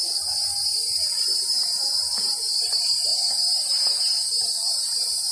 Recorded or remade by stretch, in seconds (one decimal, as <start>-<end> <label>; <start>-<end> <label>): 0.0-0.8 recorded; 0.8-3.1 remade; 3.1-4.7 recorded; 4.7-5.3 remade